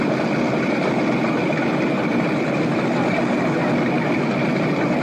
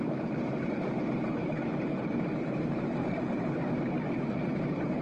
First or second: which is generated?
second